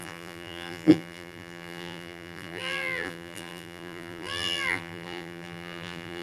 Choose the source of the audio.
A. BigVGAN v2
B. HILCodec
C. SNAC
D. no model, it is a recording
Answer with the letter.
A